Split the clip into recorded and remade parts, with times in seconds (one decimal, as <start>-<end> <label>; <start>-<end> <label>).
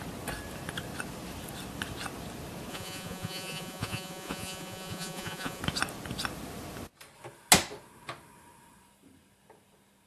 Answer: 0.0-2.7 recorded; 2.7-5.6 remade; 5.6-10.1 recorded